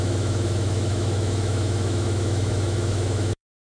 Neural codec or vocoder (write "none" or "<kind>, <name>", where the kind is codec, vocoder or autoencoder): autoencoder, DAC-VAE